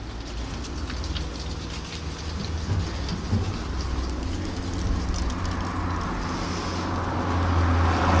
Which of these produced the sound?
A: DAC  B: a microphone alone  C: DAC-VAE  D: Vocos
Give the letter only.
B